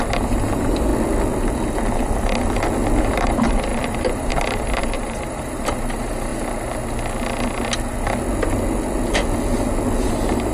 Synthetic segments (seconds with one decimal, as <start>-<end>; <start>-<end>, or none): 0.0-0.9; 3.0-6.3; 10.0-10.5